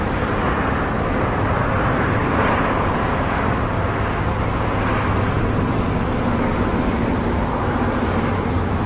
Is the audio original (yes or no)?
no